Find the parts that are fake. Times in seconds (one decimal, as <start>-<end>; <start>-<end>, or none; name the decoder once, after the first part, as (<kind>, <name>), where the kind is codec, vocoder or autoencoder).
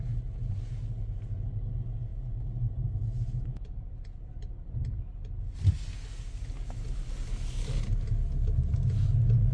2.1-4.3 (vocoder, Vocos)